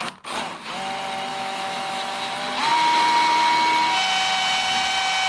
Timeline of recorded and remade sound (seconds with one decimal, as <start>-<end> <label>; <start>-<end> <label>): 0.0-1.3 recorded; 1.3-2.3 remade; 2.3-5.3 recorded